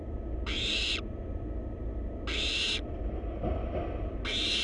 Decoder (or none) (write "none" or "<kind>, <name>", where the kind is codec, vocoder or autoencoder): none